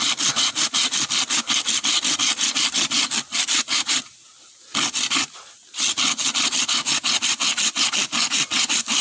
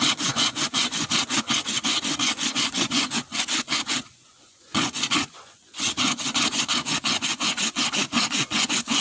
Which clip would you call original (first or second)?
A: first